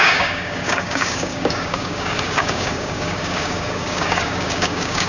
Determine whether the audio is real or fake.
fake